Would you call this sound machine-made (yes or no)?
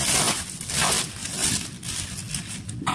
no